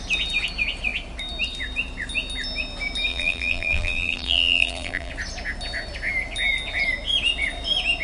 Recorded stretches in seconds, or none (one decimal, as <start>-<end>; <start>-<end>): 0.0-3.1; 5.1-8.0